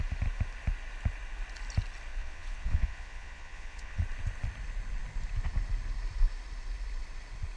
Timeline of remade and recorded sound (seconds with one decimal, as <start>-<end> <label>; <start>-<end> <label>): 0.0-2.1 recorded; 2.1-4.0 remade; 4.0-7.6 recorded